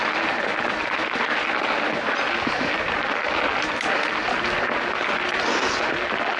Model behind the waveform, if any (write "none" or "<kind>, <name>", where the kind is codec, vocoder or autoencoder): none